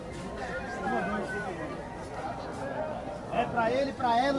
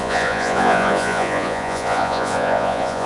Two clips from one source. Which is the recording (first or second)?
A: first